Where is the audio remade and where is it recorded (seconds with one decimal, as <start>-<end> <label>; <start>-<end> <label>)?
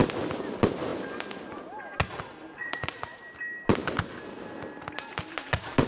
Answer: 0.0-2.6 recorded; 2.6-3.2 remade; 3.2-5.9 recorded